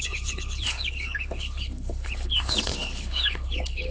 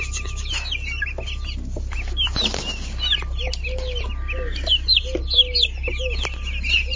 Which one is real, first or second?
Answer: second